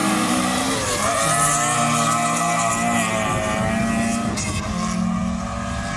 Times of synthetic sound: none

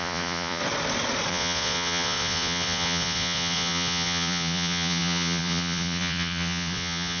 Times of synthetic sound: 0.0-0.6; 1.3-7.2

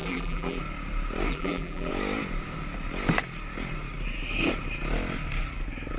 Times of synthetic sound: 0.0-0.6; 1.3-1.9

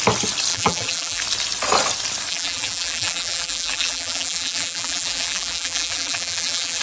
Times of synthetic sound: 0.5-1.2; 2.3-6.8

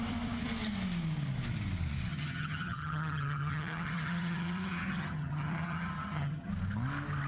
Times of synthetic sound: 2.1-6.5